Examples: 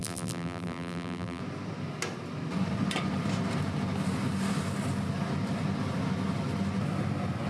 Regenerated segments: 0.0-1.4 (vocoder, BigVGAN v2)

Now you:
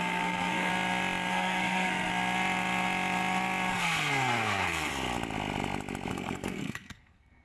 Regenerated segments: 0.0-0.7 (codec, SNAC); 1.3-2.1; 3.7-4.9; 6.1-7.4

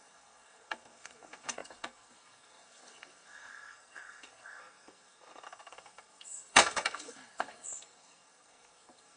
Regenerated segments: 0.0-9.2 (codec, SNAC)

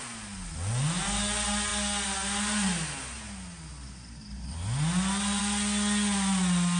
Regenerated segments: none

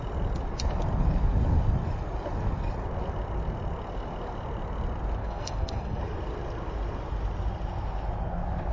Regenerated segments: 5.2-6.0 (codec, SNAC)